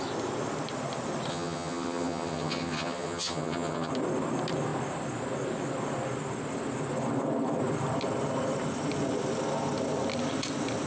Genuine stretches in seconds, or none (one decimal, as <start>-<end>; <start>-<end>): 0.0-1.3; 3.9-10.9

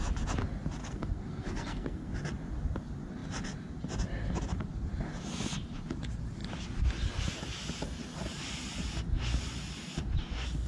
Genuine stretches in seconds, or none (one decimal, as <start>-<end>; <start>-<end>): 0.0-0.8; 2.1-10.7

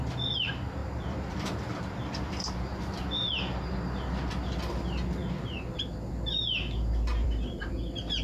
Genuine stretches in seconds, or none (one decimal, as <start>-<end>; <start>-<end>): 0.0-0.8; 2.6-7.1; 7.7-8.2